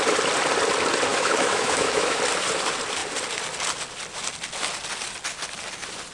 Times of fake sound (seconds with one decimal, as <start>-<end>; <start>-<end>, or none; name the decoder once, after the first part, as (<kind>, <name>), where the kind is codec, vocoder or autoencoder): 1.1-2.2 (autoencoder, DAC-VAE)